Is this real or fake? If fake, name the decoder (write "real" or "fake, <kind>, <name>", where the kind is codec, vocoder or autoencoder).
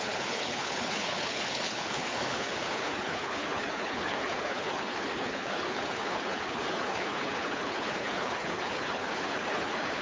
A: fake, codec, HILCodec